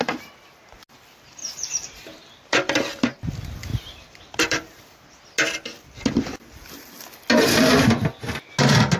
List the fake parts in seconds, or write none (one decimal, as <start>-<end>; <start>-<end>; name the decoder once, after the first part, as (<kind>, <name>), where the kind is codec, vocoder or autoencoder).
1.4-2.7 (vocoder, BigVGAN v2); 3.7-5.2